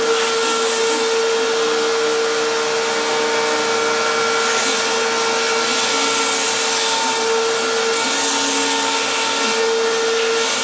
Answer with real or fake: real